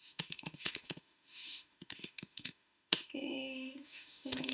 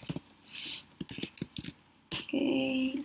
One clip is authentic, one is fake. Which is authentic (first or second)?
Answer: second